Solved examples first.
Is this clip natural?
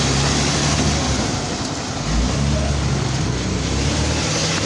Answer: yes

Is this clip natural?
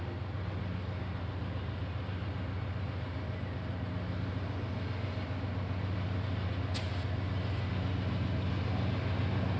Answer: yes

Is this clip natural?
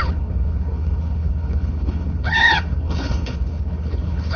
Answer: no